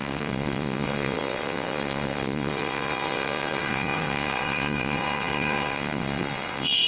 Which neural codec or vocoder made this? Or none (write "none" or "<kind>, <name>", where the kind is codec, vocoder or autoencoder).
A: vocoder, WaveNeXt